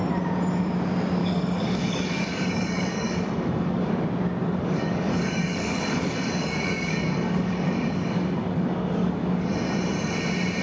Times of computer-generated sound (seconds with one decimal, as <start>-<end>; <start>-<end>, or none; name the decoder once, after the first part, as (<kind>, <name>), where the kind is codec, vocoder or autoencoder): 1.2-3.9 (codec, DAC); 4.4-9.5